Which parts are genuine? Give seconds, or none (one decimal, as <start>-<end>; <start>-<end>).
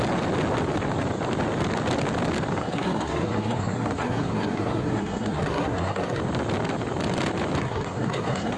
0.0-2.6; 6.2-7.6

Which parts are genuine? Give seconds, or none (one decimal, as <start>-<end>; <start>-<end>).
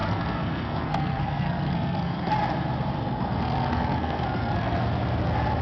2.3-3.0; 4.8-5.6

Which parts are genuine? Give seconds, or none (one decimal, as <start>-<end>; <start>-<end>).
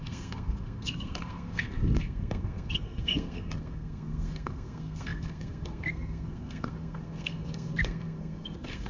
none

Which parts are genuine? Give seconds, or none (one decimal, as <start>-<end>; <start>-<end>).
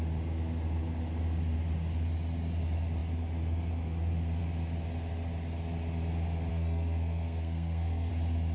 0.0-6.5; 8.1-8.5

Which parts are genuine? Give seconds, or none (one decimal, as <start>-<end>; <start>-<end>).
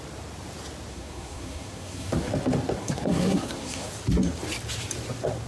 0.0-0.9; 2.3-2.8; 3.9-5.5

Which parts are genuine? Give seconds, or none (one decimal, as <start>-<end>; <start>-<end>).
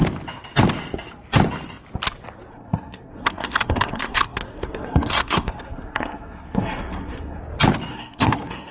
0.0-2.5; 7.4-7.9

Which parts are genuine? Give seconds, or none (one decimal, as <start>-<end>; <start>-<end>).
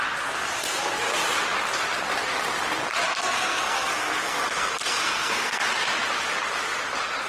0.0-3.2; 5.6-7.3